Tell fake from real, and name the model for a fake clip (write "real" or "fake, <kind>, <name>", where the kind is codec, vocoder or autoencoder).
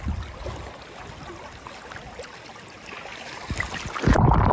real